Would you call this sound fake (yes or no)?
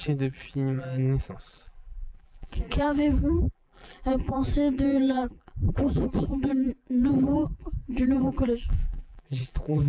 yes